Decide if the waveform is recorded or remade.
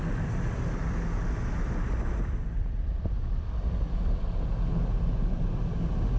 recorded